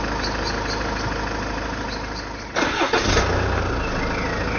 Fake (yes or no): no